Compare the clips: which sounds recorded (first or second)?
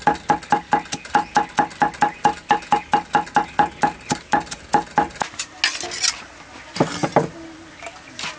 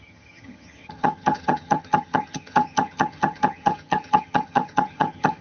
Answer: first